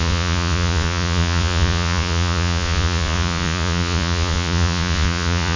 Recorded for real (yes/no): no